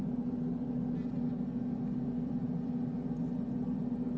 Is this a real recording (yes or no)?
yes